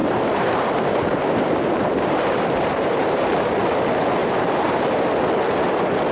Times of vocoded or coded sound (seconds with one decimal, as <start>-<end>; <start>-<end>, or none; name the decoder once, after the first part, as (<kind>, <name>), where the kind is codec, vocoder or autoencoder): 0.0-3.7 (vocoder, BigVGAN v2); 4.2-5.1